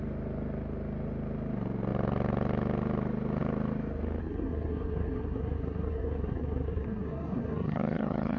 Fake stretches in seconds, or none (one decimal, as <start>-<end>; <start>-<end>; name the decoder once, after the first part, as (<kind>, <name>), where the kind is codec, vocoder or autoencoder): 4.2-8.4 (codec, SNAC)